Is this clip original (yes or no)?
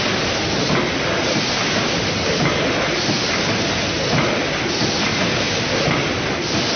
yes